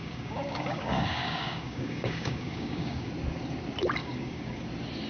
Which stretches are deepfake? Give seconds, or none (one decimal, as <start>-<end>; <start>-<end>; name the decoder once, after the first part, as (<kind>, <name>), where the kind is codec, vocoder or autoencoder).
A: 0.0-3.1 (codec, DAC); 4.0-4.6